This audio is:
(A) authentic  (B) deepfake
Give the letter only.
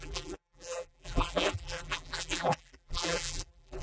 B